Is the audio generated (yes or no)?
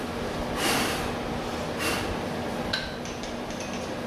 no